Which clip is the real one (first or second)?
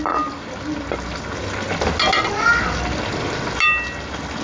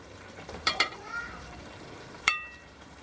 first